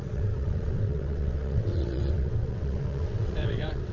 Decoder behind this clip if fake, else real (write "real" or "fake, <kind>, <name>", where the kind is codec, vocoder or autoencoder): fake, vocoder, WaveNeXt